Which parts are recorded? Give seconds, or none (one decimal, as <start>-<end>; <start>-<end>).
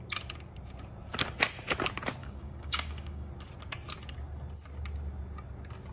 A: 0.0-2.2; 3.3-5.9